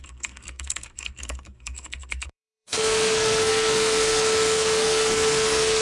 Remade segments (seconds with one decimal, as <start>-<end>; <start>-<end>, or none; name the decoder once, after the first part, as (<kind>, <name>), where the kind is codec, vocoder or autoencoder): 0.0-5.8 (codec, SNAC)